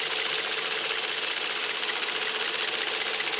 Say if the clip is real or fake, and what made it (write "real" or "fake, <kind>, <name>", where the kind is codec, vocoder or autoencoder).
real